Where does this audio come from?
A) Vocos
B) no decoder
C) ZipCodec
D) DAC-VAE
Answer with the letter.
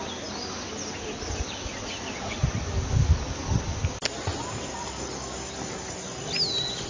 B